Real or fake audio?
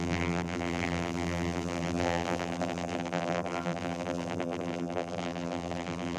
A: fake